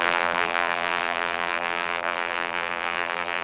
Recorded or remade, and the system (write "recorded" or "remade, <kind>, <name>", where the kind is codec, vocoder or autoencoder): remade, vocoder, BigVGAN v2